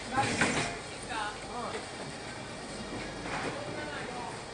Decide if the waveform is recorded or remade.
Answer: recorded